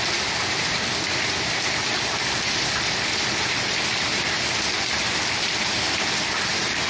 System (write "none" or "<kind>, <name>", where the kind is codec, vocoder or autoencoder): none